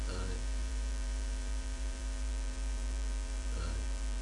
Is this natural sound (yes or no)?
no